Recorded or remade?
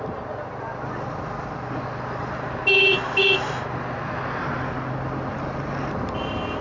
recorded